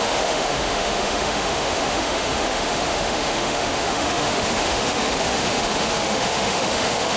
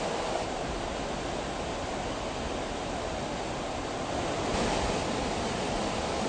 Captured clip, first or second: second